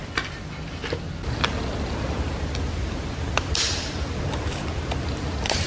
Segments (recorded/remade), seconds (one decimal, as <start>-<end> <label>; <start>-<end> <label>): 0.0-5.7 recorded